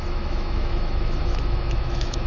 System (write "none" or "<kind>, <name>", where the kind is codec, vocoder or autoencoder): autoencoder, DAC-VAE